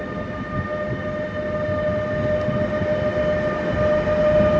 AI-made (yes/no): no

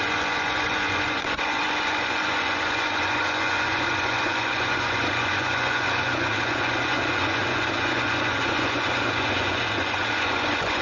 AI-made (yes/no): yes